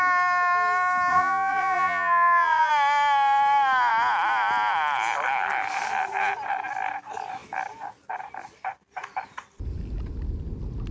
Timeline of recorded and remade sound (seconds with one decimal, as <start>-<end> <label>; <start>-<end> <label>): 0.0-1.1 recorded; 1.1-2.7 remade; 2.7-10.9 recorded